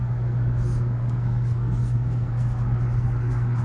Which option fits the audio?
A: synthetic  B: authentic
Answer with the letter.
A